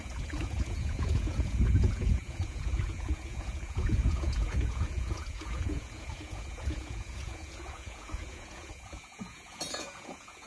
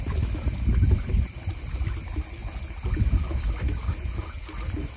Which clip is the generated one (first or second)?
first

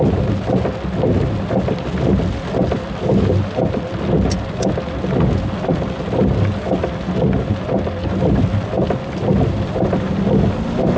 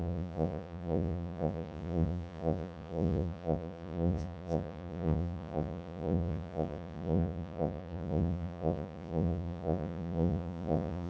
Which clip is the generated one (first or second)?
second